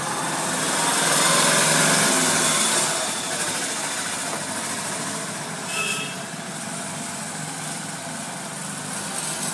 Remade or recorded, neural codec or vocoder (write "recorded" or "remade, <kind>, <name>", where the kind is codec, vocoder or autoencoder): recorded